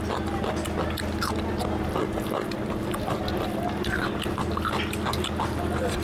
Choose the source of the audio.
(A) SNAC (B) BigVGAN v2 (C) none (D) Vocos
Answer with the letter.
C